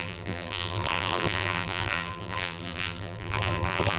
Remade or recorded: remade